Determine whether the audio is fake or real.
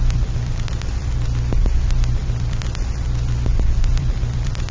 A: fake